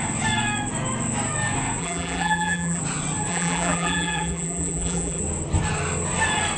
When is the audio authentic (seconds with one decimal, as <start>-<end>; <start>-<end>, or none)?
0.0-1.8; 2.8-3.3; 5.2-6.6